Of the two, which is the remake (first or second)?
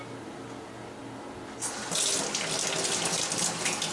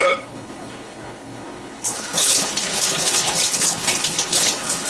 second